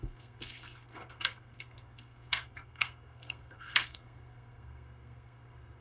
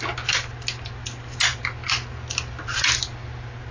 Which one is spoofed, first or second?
first